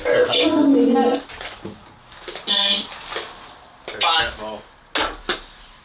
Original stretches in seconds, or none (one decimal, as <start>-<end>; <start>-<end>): 0.0-5.8